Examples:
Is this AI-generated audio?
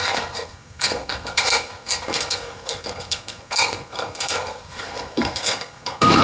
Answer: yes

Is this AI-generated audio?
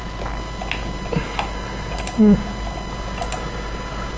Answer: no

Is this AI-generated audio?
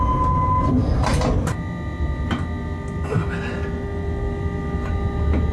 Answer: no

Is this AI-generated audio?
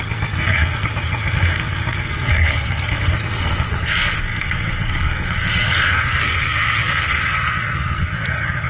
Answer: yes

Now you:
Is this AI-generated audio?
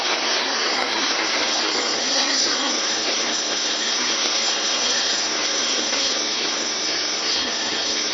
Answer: yes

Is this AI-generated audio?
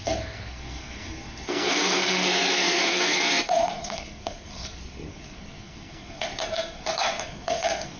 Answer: yes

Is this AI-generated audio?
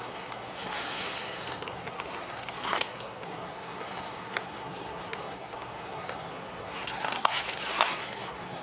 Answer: yes